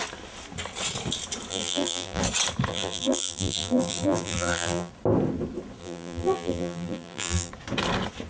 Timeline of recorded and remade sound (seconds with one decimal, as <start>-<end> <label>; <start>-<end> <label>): 0.0-1.5 recorded; 1.5-2.2 remade; 2.2-2.7 recorded; 2.7-4.9 remade; 4.9-5.8 recorded; 5.8-7.5 remade; 7.5-8.3 recorded